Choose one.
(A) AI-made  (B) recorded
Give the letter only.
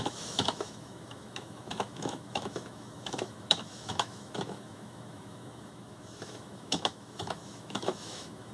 A